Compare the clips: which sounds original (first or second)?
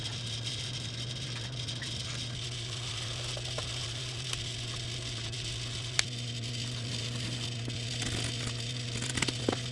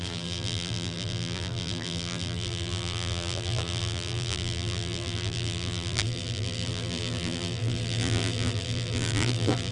first